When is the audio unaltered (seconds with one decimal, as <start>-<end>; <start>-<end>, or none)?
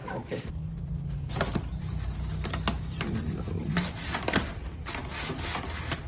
0.0-6.1